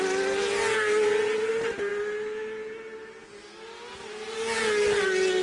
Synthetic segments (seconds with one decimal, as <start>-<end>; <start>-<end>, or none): none